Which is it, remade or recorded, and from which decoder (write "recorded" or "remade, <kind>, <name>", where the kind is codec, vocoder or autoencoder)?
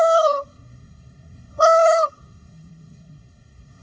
remade, codec, SNAC